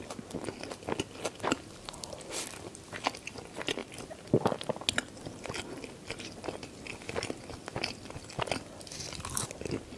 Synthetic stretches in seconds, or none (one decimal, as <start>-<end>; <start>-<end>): none